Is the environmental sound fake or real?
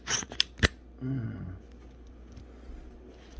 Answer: real